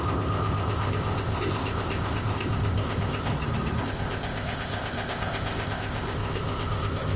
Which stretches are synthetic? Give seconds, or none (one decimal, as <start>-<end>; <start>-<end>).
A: 0.0-3.3; 3.8-7.2